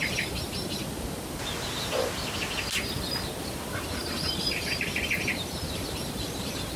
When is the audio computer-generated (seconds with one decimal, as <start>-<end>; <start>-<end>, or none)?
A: 0.0-0.8; 3.7-6.8